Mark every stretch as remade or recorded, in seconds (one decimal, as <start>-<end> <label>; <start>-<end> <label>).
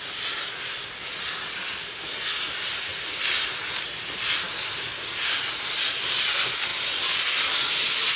0.0-8.2 recorded